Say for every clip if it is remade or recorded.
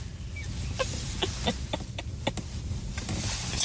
recorded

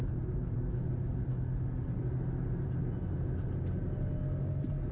recorded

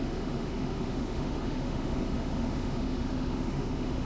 remade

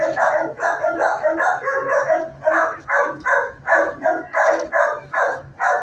remade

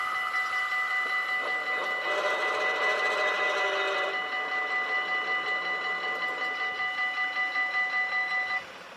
recorded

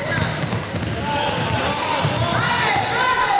recorded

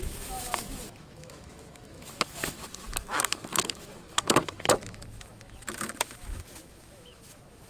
remade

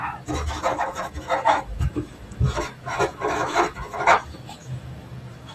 remade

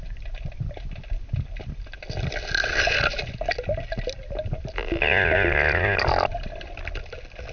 recorded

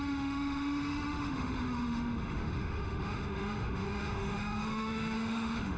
remade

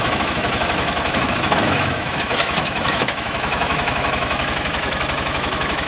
remade